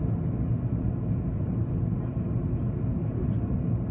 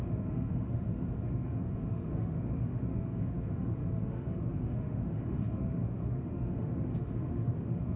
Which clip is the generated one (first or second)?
second